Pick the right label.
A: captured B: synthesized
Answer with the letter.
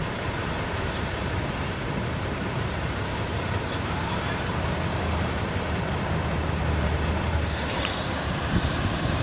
B